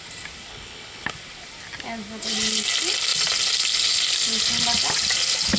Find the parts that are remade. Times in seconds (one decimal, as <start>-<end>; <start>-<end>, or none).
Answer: 0.5-1.1